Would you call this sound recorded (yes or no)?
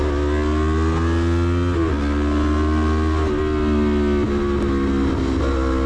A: yes